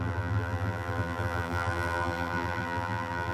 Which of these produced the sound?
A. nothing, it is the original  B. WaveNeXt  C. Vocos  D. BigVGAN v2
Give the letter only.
D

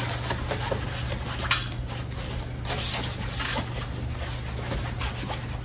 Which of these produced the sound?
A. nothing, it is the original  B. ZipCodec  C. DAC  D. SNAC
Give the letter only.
A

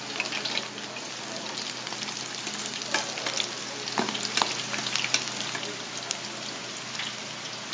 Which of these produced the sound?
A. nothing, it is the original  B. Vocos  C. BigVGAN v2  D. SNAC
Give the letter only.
A